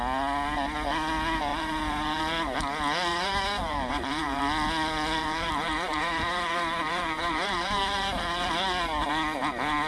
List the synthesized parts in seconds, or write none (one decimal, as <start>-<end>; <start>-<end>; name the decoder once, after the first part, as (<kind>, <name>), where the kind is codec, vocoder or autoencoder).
1.5-2.2 (vocoder, BigVGAN v2); 3.1-4.4; 5.2-8.5

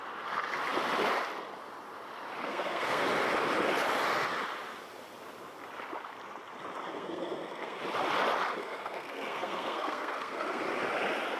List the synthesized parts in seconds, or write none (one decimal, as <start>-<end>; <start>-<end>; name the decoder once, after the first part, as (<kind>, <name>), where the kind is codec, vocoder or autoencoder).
2.4-3.0 (codec, SNAC); 6.9-7.8; 8.6-10.6

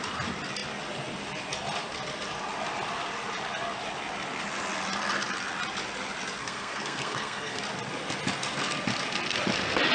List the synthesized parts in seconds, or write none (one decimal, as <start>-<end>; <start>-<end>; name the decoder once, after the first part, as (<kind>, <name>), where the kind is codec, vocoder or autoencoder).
6.4-7.6 (codec, SNAC)

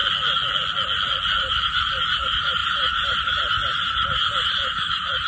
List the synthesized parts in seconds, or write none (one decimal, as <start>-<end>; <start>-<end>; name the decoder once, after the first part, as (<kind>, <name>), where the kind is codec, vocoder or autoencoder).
1.4-5.3 (vocoder, BigVGAN v2)

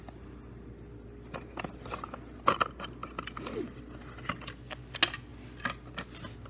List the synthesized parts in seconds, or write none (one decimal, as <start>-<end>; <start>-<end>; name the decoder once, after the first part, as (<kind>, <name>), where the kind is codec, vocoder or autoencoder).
none

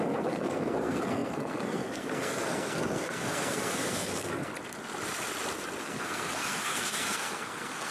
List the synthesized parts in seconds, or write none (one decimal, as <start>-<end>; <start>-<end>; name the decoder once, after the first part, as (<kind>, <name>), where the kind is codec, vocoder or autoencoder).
0.0-4.5 (codec, SNAC); 5.8-7.9

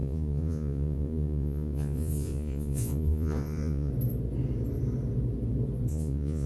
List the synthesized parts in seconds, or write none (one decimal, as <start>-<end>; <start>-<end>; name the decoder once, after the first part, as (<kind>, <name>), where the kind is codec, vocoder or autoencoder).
0.0-3.9 (vocoder, Vocos); 5.9-6.5